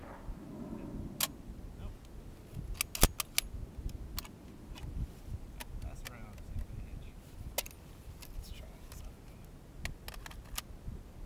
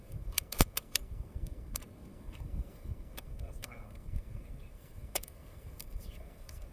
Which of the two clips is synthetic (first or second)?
second